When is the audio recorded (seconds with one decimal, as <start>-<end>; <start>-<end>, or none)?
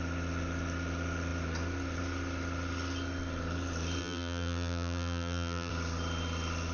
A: 0.0-4.0; 5.7-6.7